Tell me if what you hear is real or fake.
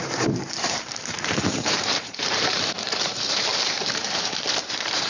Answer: fake